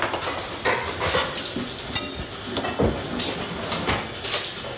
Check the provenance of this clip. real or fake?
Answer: real